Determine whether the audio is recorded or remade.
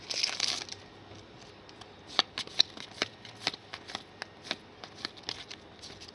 recorded